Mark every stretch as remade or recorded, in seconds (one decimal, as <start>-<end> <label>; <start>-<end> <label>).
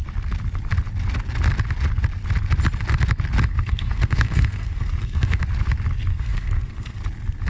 0.0-3.5 recorded; 3.5-5.4 remade; 5.4-6.1 recorded; 6.1-7.0 remade; 7.0-7.5 recorded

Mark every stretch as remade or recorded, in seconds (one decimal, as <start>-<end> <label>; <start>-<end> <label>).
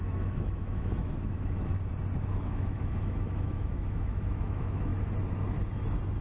0.0-1.7 remade; 1.7-2.3 recorded; 2.3-4.9 remade; 4.9-6.2 recorded